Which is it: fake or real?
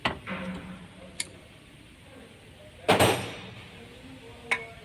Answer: real